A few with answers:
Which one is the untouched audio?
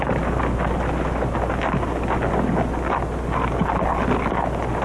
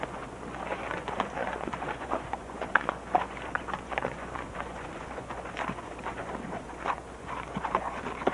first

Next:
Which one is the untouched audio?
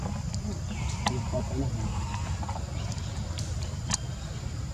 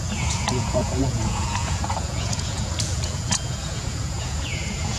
first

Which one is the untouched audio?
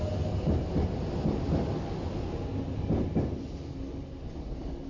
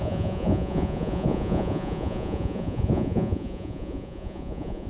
first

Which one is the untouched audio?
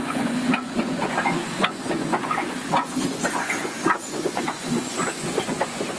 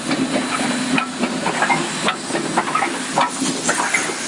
second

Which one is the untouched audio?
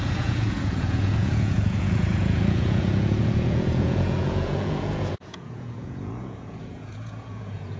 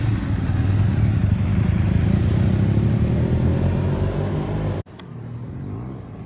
second